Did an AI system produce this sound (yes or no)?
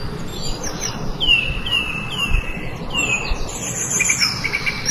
yes